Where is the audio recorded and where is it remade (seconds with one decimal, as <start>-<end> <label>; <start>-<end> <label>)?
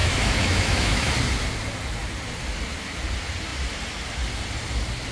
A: 0.0-1.1 remade; 1.1-5.1 recorded